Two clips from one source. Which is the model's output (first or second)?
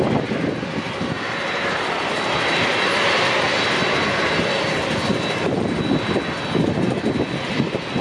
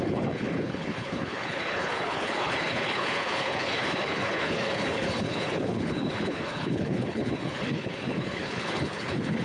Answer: second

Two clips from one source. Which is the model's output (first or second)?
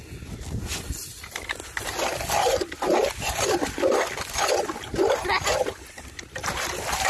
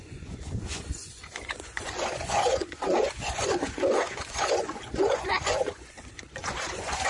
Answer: second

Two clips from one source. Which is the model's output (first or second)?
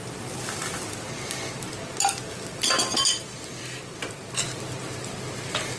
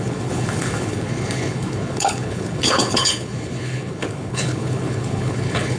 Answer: second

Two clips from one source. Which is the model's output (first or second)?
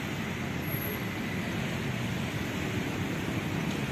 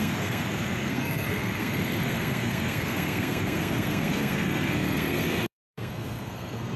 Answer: second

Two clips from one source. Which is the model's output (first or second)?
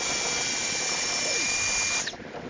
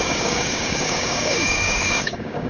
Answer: second